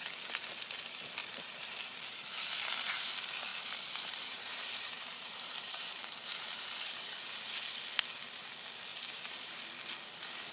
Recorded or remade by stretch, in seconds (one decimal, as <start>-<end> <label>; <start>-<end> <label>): 0.0-1.2 recorded; 1.2-2.3 remade; 2.3-3.5 recorded; 3.5-6.1 remade; 6.1-8.9 recorded; 8.9-9.6 remade; 9.6-10.5 recorded